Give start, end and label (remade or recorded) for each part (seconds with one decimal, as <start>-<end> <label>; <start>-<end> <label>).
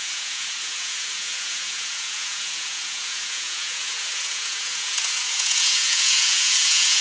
0.0-7.0 remade